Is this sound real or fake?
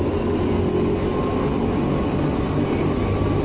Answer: real